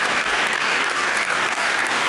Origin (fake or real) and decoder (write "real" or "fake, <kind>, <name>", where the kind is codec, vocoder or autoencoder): fake, codec, DAC